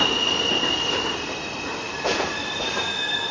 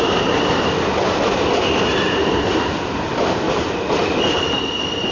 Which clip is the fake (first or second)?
second